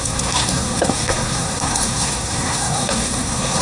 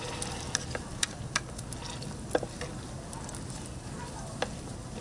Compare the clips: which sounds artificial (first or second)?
first